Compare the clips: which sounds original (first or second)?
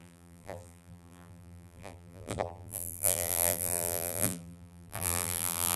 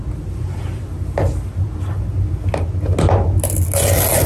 second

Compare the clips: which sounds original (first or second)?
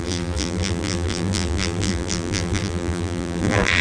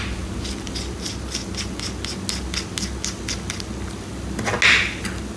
second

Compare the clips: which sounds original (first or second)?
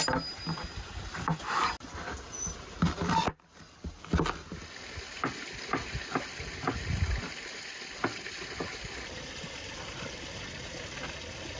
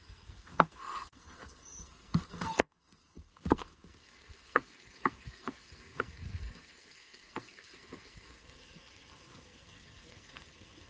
first